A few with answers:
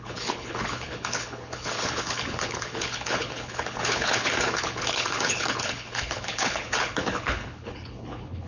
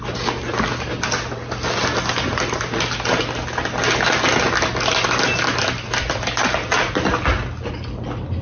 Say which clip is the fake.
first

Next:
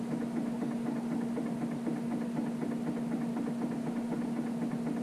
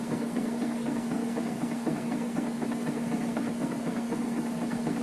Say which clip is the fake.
second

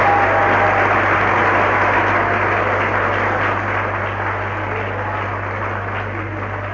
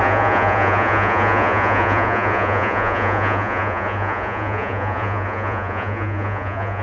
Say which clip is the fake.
second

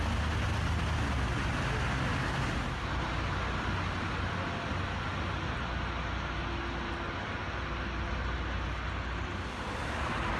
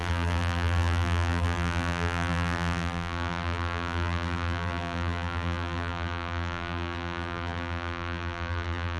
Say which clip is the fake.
second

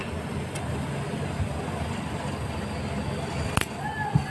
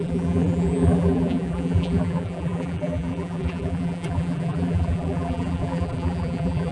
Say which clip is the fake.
second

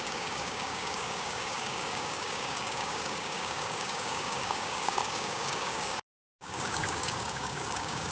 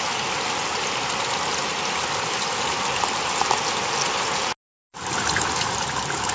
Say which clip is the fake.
first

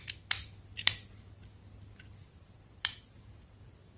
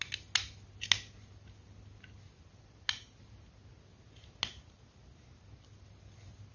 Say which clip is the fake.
first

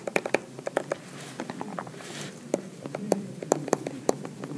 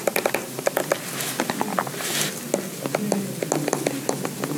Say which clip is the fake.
first